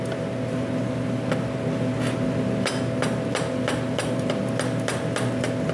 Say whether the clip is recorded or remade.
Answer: recorded